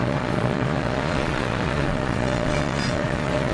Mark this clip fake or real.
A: fake